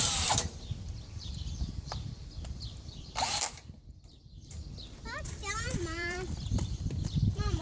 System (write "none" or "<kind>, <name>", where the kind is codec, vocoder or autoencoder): vocoder, BigVGAN v2